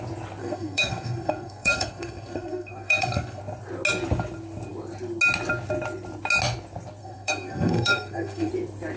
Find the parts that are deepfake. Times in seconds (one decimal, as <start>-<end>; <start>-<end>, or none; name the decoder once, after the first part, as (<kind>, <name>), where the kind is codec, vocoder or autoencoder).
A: 0.4-3.4 (codec, SNAC); 7.0-8.5